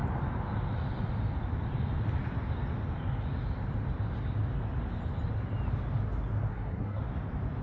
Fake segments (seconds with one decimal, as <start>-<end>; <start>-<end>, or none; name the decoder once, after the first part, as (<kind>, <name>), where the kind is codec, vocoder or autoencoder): 6.5-7.0 (codec, SNAC)